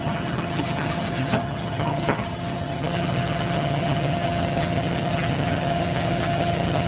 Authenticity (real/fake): fake